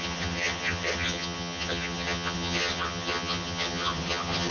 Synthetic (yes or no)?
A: yes